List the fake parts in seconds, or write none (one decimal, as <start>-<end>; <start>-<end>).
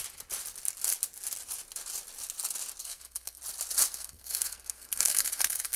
2.8-3.4; 3.9-5.8